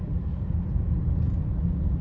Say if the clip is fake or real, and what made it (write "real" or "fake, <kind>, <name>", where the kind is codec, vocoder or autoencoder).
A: real